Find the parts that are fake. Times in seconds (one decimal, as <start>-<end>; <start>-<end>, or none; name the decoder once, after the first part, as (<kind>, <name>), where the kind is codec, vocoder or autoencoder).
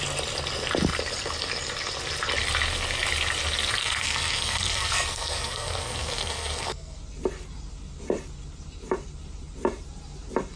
3.8-7.0 (codec, SNAC)